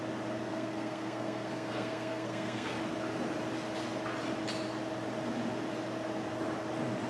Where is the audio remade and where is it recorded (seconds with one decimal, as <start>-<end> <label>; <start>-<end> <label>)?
0.0-0.5 recorded; 0.5-2.8 remade; 2.8-7.1 recorded